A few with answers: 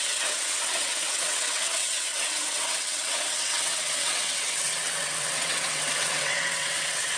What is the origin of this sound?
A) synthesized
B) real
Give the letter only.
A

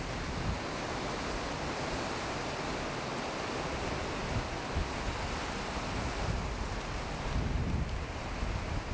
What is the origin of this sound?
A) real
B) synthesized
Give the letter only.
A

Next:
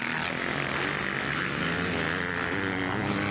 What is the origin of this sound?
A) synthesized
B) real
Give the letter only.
B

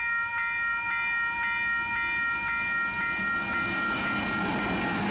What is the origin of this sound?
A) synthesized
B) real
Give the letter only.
B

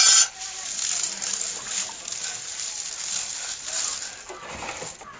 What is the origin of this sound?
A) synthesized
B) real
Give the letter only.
B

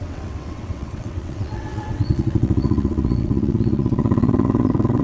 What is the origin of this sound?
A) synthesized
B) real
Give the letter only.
A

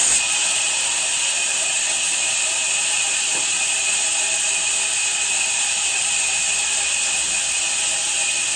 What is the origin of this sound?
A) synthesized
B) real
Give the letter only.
B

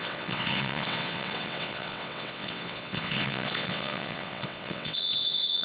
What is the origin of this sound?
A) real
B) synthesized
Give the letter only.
B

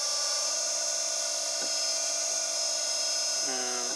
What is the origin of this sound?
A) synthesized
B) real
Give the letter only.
B